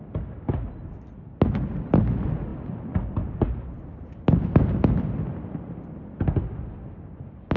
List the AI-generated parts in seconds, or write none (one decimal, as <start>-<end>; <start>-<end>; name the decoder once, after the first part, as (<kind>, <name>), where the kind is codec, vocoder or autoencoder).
none